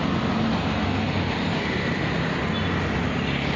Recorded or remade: recorded